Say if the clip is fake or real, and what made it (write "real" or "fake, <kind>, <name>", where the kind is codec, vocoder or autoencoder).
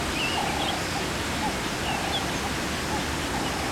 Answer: real